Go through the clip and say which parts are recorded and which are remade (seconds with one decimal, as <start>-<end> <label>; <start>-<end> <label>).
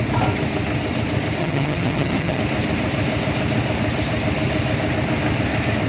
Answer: 0.0-1.4 recorded; 1.4-2.4 remade; 2.4-5.9 recorded